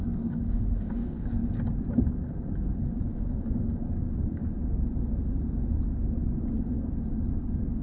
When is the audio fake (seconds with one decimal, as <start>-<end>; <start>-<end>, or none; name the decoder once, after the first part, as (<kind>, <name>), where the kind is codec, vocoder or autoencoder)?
0.0-1.4 (codec, DAC); 2.9-4.4